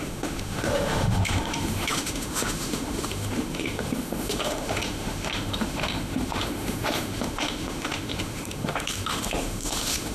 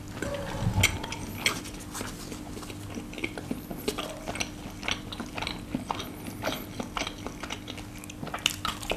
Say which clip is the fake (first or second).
first